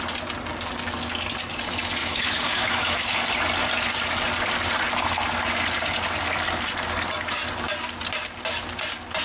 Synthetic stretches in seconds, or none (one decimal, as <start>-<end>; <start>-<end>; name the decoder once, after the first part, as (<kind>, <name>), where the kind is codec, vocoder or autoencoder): 2.0-3.2 (autoencoder, DAC-VAE)